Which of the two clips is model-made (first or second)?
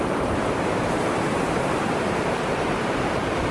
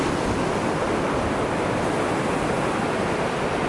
first